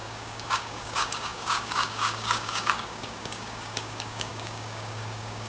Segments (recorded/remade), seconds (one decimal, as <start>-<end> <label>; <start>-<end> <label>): 0.0-5.5 remade